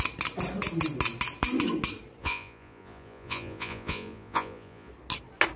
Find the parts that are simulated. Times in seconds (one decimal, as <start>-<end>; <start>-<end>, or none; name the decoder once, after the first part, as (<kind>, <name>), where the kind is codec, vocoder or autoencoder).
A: 2.2-4.9 (vocoder, Vocos)